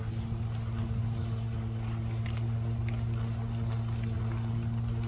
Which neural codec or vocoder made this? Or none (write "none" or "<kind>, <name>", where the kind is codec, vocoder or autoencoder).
none